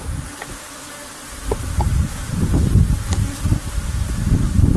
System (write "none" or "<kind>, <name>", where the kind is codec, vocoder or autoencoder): none